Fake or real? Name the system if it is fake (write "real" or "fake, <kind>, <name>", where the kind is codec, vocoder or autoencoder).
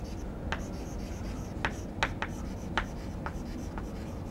real